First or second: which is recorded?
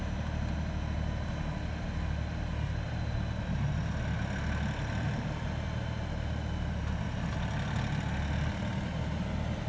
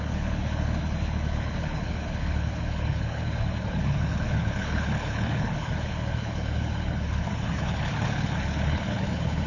first